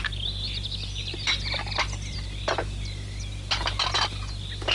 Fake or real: real